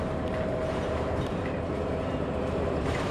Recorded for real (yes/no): no